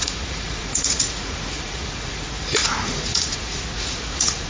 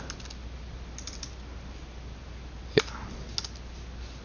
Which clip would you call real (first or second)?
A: second